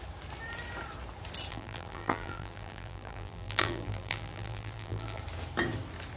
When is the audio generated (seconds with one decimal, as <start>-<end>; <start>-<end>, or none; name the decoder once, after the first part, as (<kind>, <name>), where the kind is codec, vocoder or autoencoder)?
1.5-5.2 (vocoder, BigVGAN v2)